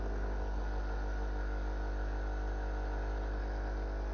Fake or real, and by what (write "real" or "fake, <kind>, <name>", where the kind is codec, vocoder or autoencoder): real